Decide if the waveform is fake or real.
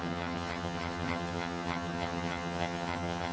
fake